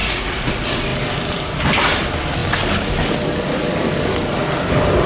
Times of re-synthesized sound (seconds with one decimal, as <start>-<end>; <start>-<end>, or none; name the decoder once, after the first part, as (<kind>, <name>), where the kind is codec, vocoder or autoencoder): 0.0-0.5 (vocoder, Vocos)